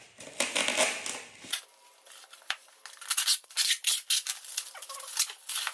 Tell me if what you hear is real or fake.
real